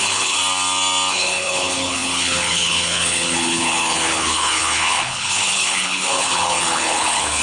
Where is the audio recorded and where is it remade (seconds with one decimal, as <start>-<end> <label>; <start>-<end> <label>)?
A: 0.0-0.4 remade; 0.4-1.1 recorded; 1.1-7.4 remade